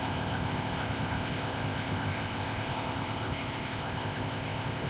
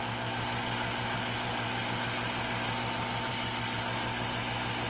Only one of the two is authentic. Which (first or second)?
second